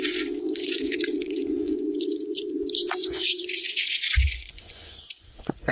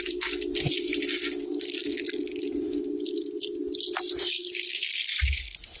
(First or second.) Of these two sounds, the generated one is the first